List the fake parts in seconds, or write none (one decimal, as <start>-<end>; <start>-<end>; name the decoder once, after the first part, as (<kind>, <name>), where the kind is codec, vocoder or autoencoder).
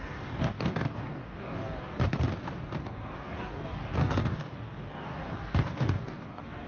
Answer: 0.0-2.0 (codec, DAC); 2.8-6.7